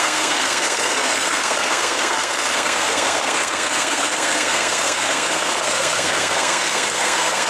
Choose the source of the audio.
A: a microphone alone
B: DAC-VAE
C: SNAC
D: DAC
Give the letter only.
C